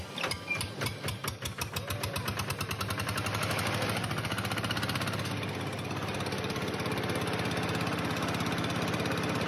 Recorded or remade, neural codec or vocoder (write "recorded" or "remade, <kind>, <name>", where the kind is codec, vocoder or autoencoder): recorded